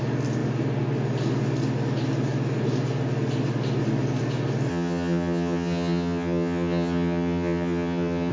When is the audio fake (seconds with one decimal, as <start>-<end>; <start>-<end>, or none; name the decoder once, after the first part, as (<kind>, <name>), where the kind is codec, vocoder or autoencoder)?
4.7-8.3 (vocoder, HiFi-GAN)